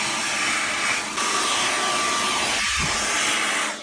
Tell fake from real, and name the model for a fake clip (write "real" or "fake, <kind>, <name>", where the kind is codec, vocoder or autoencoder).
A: real